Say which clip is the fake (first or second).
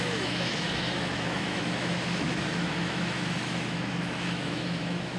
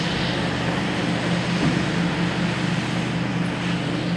first